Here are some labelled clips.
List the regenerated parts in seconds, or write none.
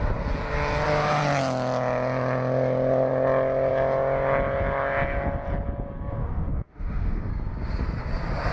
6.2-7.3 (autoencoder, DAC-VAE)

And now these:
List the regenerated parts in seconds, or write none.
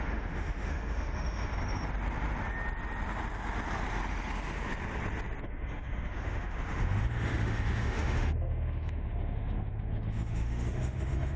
0.0-1.5 (autoencoder, DAC-VAE); 5.4-11.4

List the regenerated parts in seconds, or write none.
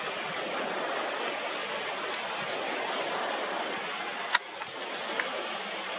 none